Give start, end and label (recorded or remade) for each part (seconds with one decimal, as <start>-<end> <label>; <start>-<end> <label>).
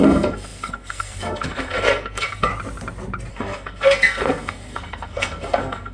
0.0-2.5 remade; 2.5-3.3 recorded; 3.3-5.9 remade